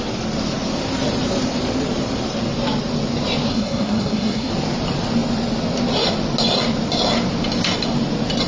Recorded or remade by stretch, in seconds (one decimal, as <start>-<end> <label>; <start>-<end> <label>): 0.0-3.5 recorded; 3.5-4.5 remade; 4.5-8.5 recorded